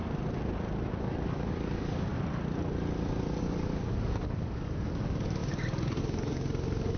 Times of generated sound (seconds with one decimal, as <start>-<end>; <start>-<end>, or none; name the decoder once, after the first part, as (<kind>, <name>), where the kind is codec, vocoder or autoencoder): 1.0-2.1 (codec, DAC); 3.4-7.0